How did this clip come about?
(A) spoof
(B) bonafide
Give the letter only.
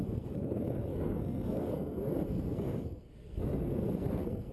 A